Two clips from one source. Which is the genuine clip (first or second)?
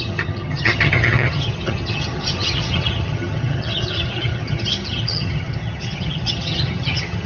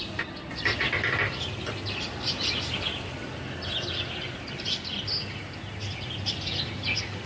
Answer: second